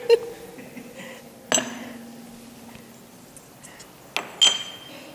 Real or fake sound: real